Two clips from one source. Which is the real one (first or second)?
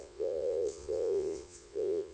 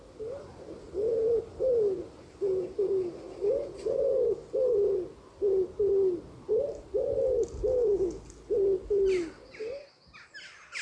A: second